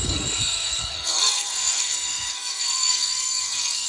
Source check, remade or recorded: remade